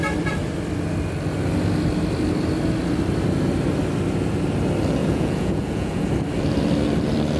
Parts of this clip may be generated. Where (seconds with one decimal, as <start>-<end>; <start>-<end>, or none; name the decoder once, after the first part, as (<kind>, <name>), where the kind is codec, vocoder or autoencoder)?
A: 5.0-6.1 (vocoder, Vocos)